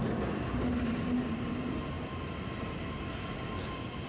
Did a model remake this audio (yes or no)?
no